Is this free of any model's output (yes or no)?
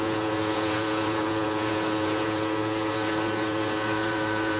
no